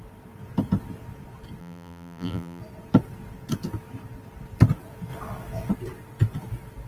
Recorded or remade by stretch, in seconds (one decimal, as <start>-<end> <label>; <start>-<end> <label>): 0.0-1.6 recorded; 1.6-2.6 remade; 2.6-6.9 recorded